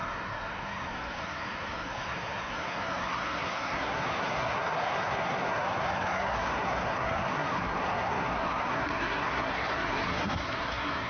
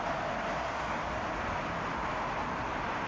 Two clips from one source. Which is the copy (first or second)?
first